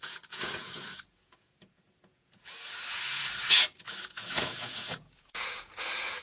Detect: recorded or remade remade